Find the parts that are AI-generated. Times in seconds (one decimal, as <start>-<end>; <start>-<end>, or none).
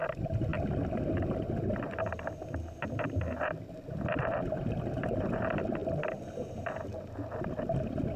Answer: none